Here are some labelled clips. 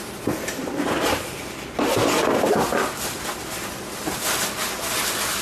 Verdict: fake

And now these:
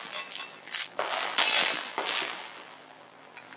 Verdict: fake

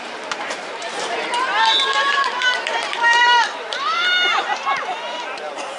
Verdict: fake